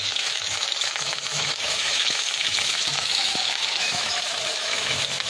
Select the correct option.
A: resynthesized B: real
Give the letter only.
A